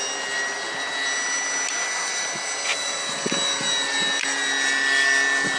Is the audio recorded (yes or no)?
yes